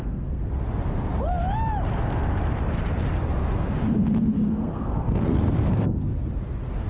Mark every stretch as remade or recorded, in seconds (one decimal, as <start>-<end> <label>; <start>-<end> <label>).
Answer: 0.0-0.4 remade; 0.4-4.5 recorded; 4.5-6.1 remade; 6.1-6.9 recorded